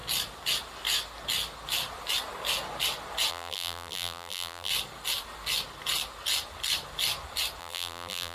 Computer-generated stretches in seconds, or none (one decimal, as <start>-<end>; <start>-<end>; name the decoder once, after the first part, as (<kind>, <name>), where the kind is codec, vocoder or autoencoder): 3.3-4.7 (vocoder, BigVGAN v2); 7.6-8.3